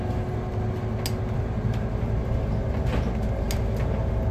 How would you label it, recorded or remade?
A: recorded